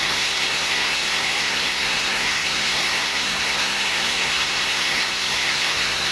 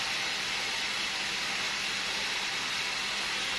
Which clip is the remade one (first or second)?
first